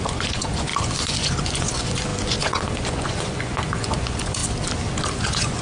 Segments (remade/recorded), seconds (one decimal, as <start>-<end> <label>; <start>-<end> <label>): 0.0-4.4 remade; 4.4-5.1 recorded; 5.1-5.6 remade